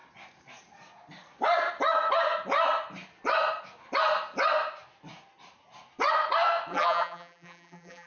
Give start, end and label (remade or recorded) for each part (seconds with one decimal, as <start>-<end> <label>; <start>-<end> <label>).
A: 0.0-6.7 recorded; 6.7-8.1 remade